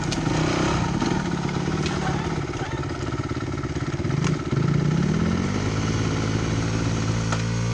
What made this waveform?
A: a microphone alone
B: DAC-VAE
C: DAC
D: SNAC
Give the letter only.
A